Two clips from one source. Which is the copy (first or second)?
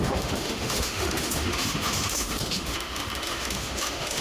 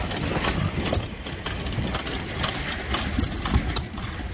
first